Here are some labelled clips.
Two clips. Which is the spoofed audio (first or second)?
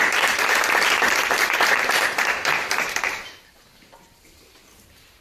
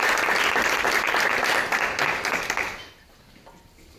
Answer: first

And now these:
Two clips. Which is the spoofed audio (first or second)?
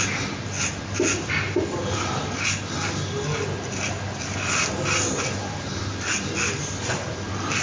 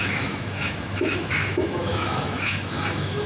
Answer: second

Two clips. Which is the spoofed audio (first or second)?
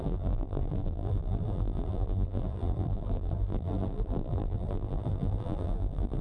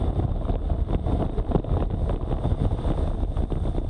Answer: first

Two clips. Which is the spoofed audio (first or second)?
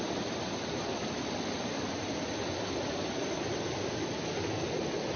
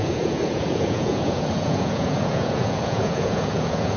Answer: second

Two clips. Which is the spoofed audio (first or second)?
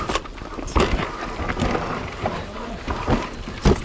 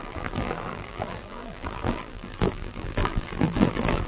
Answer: second